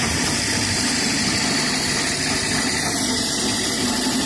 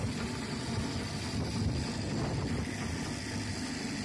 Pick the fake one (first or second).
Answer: first